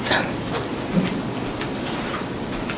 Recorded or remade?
recorded